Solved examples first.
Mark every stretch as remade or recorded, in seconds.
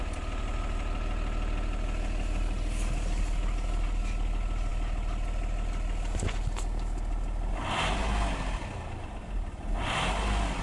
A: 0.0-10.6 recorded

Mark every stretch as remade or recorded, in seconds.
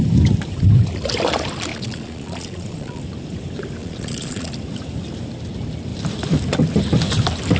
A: 0.0-1.7 recorded; 1.7-3.0 remade; 3.0-3.8 recorded; 3.8-4.5 remade; 4.5-7.6 recorded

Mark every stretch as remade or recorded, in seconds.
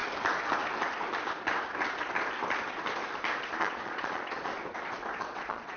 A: 0.0-3.5 recorded; 3.5-4.5 remade; 4.5-5.2 recorded; 5.2-5.8 remade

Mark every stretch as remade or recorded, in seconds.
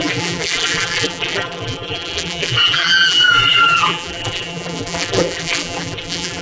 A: 0.0-6.4 remade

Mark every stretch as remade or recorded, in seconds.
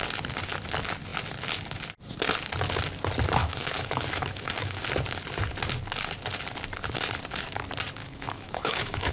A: 0.0-3.4 recorded; 3.4-4.8 remade; 4.8-8.0 recorded; 8.0-9.1 remade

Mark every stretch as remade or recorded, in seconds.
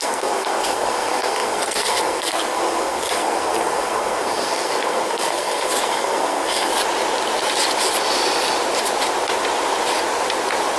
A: 0.0-6.7 remade; 6.7-10.8 recorded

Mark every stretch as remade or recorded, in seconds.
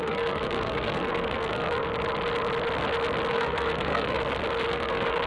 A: 0.0-1.9 remade; 1.9-3.3 recorded; 3.3-4.2 remade; 4.2-4.7 recorded; 4.7-5.3 remade